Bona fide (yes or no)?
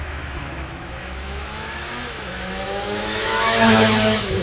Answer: no